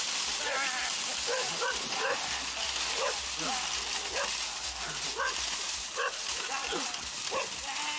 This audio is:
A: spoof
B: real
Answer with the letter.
B